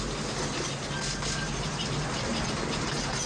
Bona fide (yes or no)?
yes